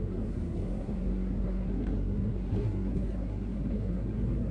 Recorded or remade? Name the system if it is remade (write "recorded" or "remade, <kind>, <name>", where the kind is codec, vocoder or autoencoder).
remade, codec, SNAC